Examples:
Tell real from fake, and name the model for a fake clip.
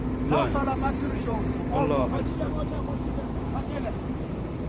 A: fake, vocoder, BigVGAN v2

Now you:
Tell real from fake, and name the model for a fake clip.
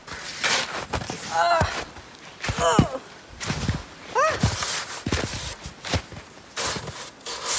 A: real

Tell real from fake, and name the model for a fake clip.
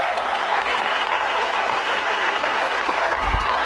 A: fake, codec, SNAC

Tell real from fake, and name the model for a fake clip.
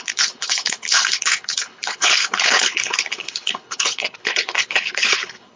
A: fake, codec, HILCodec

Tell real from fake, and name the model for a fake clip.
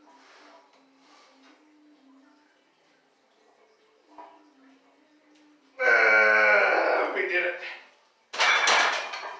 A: real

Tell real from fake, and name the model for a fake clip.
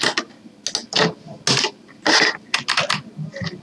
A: real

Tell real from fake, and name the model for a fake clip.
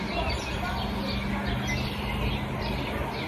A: real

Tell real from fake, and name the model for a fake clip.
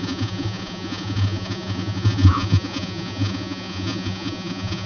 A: fake, vocoder, Vocos